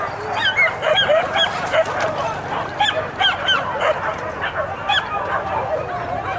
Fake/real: real